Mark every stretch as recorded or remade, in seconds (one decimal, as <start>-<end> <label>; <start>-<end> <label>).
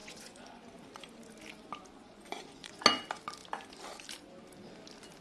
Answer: 0.0-0.6 remade; 0.6-1.9 recorded; 1.9-2.8 remade; 2.8-5.2 recorded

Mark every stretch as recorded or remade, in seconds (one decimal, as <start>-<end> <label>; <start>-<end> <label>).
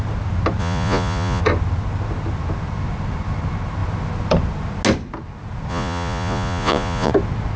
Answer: 0.0-0.6 recorded; 0.6-1.4 remade; 1.4-5.7 recorded; 5.7-7.1 remade; 7.1-7.6 recorded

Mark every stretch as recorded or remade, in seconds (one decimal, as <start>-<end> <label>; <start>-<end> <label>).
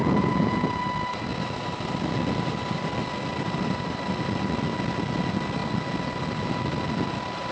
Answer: 0.0-0.8 remade; 0.8-7.5 recorded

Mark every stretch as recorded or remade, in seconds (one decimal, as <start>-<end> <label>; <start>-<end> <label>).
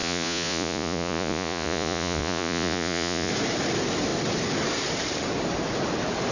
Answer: 0.0-3.3 remade; 3.3-6.3 recorded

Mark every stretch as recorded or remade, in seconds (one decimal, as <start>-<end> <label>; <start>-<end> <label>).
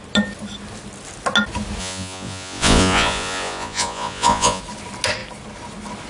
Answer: 0.0-1.8 recorded; 1.8-4.6 remade; 4.6-6.1 recorded